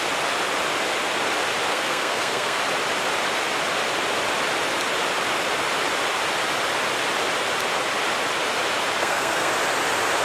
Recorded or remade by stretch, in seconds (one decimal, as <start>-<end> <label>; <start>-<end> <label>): 0.0-1.7 recorded; 1.7-2.6 remade; 2.6-9.0 recorded; 9.0-9.5 remade; 9.5-10.2 recorded